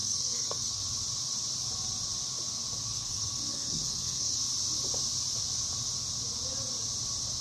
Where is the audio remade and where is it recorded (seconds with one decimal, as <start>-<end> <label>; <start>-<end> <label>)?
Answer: 0.0-0.8 remade; 0.8-2.9 recorded; 2.9-4.4 remade; 4.4-7.4 recorded